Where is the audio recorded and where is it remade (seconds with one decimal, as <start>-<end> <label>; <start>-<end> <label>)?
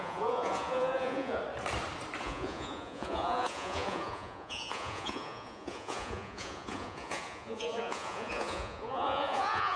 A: 0.0-1.4 remade; 1.4-2.2 recorded; 2.2-9.8 remade